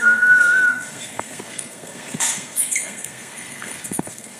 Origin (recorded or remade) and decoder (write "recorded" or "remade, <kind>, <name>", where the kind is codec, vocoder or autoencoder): remade, codec, SNAC